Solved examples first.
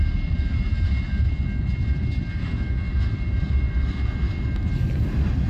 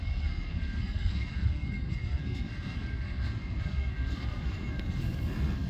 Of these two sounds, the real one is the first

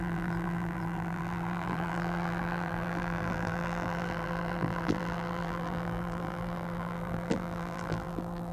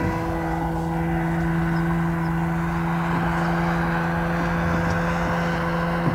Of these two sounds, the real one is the second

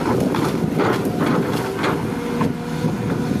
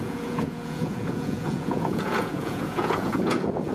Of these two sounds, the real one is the first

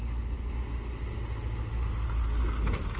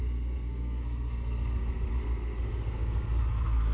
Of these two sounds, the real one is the first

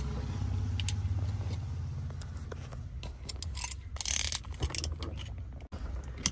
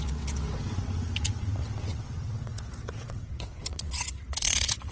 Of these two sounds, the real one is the first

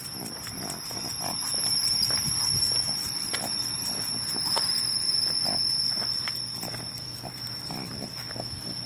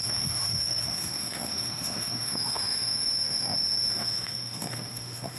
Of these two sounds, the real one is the first